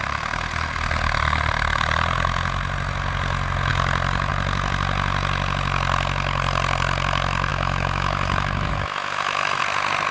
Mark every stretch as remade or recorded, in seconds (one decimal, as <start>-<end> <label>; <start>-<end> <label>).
0.0-7.5 recorded; 7.5-9.6 remade; 9.6-10.1 recorded